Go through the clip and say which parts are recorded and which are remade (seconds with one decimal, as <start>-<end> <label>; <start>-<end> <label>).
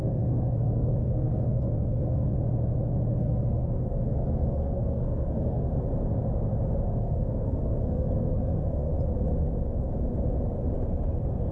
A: 0.0-2.3 remade; 2.3-3.2 recorded; 3.2-5.7 remade; 5.7-7.0 recorded; 7.0-8.9 remade; 8.9-11.5 recorded